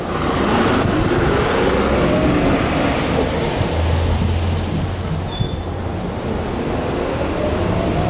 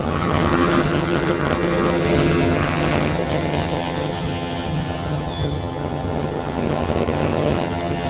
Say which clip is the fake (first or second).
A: second